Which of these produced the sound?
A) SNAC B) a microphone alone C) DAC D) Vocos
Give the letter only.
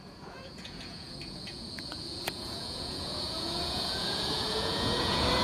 D